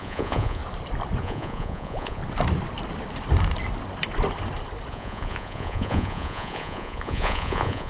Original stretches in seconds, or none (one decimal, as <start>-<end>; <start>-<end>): 0.6-1.2; 2.2-4.9